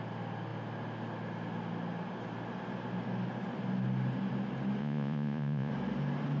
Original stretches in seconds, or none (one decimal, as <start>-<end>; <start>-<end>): 0.0-4.8; 5.7-6.4